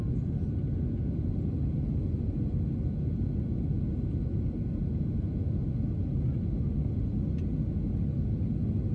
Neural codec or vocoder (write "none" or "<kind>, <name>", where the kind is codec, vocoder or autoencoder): none